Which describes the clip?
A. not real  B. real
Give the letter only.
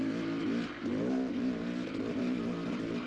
B